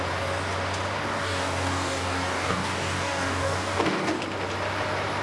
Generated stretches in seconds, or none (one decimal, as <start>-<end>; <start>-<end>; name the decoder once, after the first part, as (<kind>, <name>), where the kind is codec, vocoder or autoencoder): 1.1-4.2 (codec, DAC)